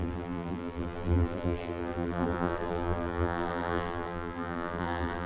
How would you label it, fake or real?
fake